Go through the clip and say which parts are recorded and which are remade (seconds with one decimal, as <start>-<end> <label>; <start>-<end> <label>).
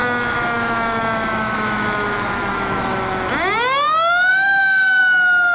0.0-3.3 remade; 3.3-4.3 recorded; 4.3-5.0 remade; 5.0-5.5 recorded